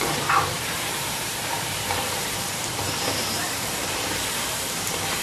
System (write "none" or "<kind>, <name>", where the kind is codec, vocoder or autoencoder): vocoder, BigVGAN v2